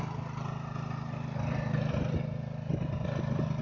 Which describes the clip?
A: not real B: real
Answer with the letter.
B